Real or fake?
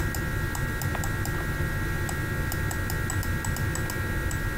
real